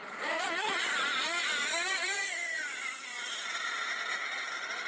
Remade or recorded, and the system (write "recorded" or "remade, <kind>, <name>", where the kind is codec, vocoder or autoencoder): remade, vocoder, Vocos